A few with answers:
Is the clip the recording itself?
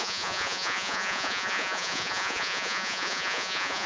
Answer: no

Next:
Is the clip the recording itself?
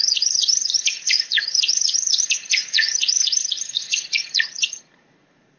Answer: no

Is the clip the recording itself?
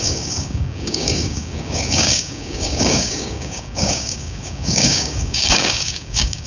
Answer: no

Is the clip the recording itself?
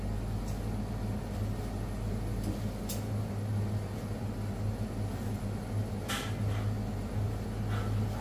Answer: yes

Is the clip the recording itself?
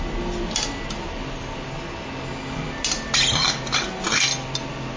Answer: yes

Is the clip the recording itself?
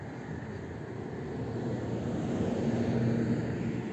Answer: yes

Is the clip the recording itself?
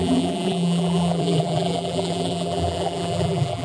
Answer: no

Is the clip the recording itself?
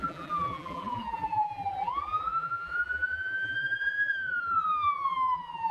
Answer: no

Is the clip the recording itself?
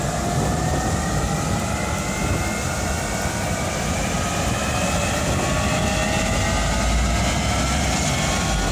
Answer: yes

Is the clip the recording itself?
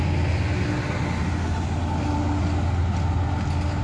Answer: yes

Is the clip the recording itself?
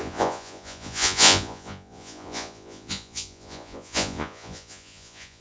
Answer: no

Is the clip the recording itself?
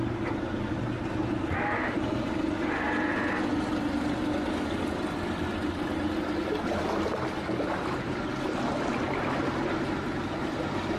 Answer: yes